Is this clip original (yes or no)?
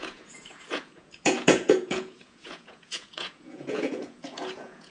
no